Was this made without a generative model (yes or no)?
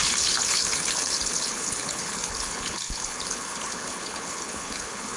no